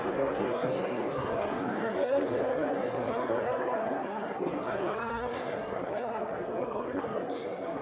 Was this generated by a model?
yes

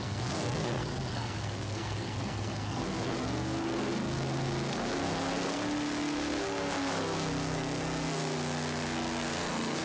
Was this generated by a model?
yes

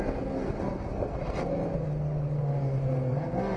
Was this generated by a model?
yes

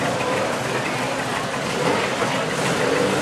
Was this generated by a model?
no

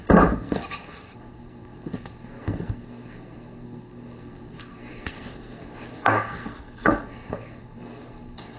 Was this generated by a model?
yes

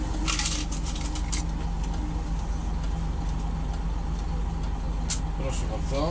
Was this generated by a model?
no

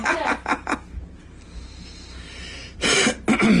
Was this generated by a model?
no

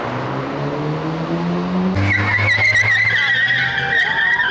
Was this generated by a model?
no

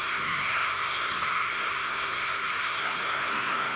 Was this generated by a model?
yes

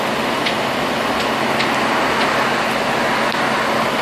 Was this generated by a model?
no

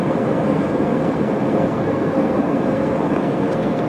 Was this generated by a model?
yes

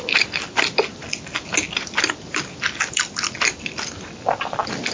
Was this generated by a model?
no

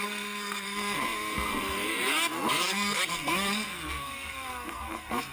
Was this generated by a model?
yes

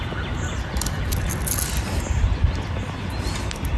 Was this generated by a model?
no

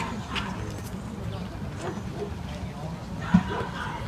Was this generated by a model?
no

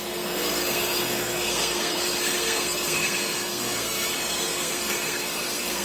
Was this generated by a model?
yes